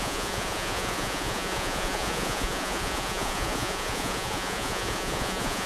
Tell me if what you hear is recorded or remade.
remade